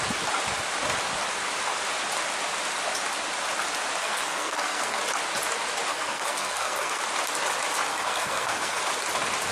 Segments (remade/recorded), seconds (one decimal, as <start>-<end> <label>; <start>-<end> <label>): 0.0-4.0 recorded; 4.0-5.0 remade; 5.0-5.9 recorded; 5.9-7.0 remade; 7.0-7.9 recorded; 7.9-8.8 remade; 8.8-9.5 recorded